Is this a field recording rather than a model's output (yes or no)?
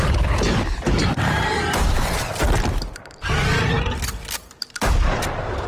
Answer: no